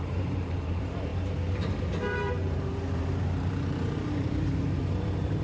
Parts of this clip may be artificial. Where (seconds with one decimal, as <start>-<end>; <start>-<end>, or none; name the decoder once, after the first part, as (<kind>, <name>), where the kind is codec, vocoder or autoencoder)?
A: 0.0-5.4 (vocoder, BigVGAN v2)